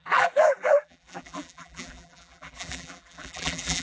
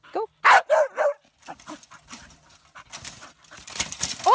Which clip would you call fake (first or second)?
first